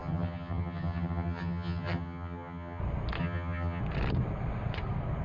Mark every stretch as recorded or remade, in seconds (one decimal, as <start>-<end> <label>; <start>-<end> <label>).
0.0-2.8 remade; 2.8-3.2 recorded; 3.2-3.8 remade; 3.8-5.2 recorded